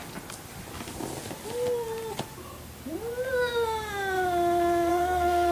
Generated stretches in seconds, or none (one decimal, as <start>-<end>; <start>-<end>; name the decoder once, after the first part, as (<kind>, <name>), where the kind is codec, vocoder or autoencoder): 4.9-5.5 (codec, SNAC)